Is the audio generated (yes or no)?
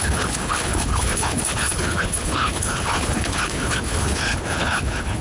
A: yes